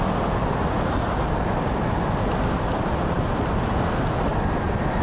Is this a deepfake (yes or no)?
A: no